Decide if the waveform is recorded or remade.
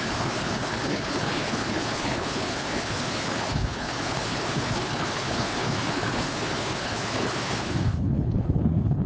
remade